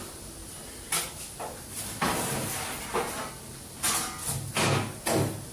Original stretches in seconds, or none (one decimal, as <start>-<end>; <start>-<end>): 0.0-5.5